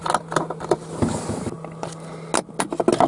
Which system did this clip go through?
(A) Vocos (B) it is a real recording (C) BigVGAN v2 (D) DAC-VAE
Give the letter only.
B